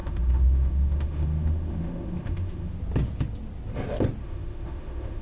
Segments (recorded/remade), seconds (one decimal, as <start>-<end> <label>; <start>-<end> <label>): 0.0-2.7 remade; 2.7-4.2 recorded; 4.2-5.2 remade